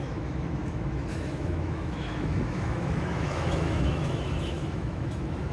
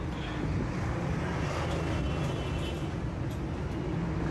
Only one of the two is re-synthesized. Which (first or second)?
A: first